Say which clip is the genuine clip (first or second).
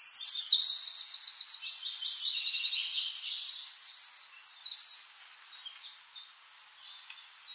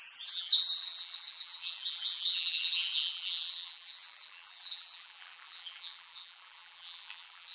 first